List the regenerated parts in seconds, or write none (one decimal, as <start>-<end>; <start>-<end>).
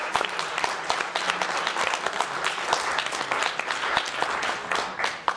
none